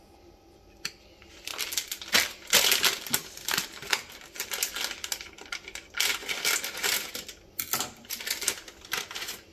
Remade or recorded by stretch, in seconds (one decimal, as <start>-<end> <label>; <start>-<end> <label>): 0.0-9.5 recorded